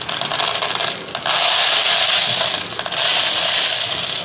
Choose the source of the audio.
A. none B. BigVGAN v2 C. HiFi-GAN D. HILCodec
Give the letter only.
A